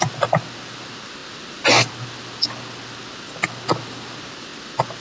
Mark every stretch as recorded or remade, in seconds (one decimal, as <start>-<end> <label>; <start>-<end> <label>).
0.0-5.0 recorded